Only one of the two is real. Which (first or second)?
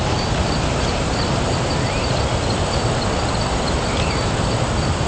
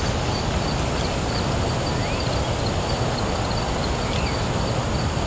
second